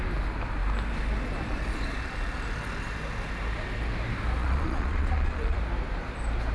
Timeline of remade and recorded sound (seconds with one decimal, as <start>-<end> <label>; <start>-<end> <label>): 0.0-4.4 recorded; 4.4-5.6 remade; 5.6-6.5 recorded